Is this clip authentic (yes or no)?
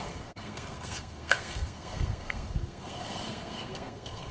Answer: no